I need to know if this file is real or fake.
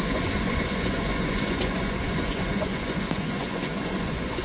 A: fake